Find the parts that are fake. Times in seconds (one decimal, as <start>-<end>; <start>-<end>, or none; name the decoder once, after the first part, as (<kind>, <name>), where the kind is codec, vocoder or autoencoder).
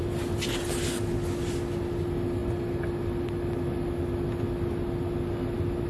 none